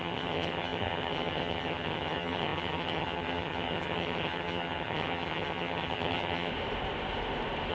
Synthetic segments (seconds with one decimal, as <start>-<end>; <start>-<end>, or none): 0.0-6.5